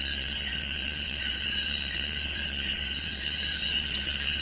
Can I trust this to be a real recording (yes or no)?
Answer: no